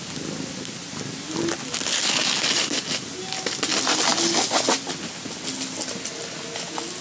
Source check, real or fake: real